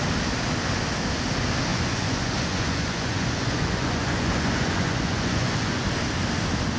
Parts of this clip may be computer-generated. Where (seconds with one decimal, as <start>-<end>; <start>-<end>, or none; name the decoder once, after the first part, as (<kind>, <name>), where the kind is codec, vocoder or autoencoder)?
1.7-5.8 (vocoder, Vocos)